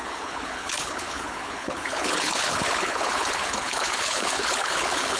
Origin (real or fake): fake